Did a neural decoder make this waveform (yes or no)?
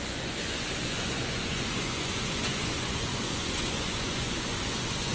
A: yes